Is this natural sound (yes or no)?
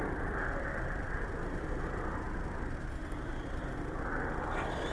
no